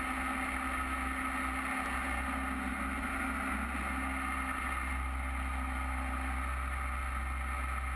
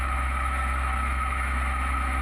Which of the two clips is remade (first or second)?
second